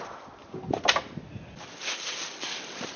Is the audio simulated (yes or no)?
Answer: no